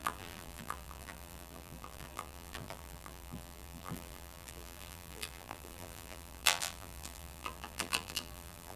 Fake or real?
fake